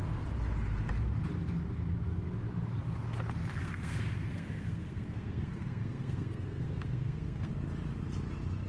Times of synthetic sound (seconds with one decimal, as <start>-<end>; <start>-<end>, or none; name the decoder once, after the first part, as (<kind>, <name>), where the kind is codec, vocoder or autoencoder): 3.6-7.5 (codec, SNAC)